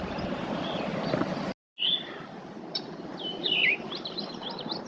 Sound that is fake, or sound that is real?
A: real